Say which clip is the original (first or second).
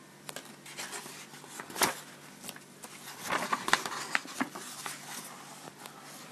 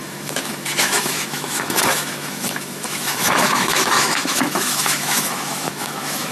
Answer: first